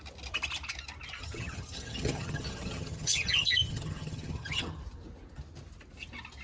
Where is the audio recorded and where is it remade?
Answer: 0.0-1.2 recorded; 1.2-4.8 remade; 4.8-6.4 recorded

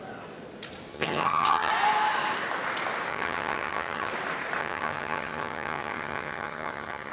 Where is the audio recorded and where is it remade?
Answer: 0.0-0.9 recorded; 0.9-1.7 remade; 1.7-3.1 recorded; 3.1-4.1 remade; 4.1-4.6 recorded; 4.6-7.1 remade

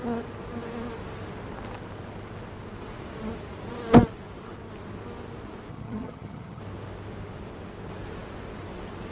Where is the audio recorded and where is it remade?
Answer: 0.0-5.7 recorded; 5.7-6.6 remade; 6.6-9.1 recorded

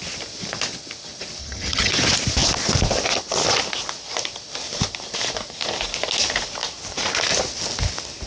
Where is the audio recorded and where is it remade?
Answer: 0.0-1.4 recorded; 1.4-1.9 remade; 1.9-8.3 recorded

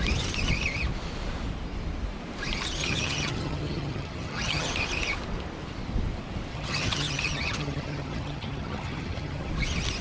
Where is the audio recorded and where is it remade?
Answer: 0.0-2.8 recorded; 2.8-4.7 remade; 4.7-6.5 recorded; 6.5-9.5 remade; 9.5-10.0 recorded

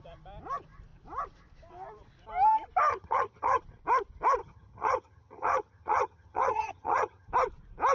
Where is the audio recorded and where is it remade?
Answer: 0.0-2.9 recorded; 2.9-3.6 remade; 3.6-4.4 recorded; 4.4-7.3 remade; 7.3-7.9 recorded